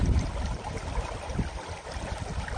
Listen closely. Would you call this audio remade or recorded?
recorded